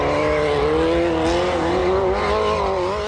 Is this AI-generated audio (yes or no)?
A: no